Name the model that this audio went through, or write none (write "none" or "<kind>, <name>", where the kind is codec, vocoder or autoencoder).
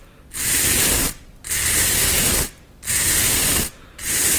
none